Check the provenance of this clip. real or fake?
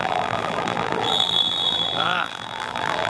fake